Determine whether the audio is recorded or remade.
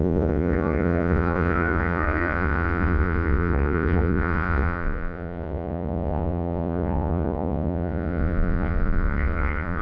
remade